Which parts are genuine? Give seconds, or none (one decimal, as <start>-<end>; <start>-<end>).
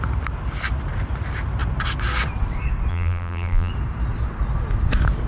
0.0-2.9; 3.7-5.3